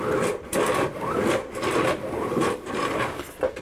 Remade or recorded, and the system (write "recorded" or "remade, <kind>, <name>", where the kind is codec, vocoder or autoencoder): recorded